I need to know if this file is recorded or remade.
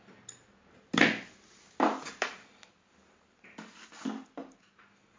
recorded